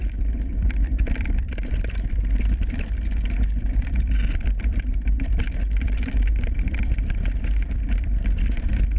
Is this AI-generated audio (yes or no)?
yes